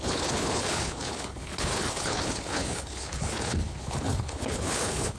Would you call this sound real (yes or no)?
no